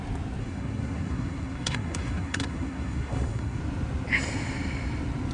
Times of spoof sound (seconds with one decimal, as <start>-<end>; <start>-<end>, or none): 0.4-3.6